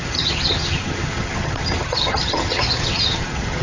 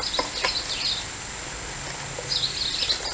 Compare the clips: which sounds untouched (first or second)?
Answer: second